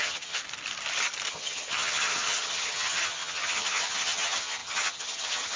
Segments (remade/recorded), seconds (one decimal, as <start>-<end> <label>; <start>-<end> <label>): 0.0-0.4 remade; 0.4-1.3 recorded; 1.3-5.6 remade